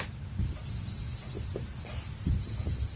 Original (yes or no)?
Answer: yes